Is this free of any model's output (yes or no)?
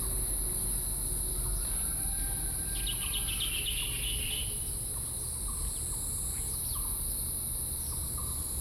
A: yes